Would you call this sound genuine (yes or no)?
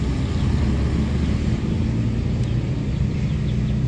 yes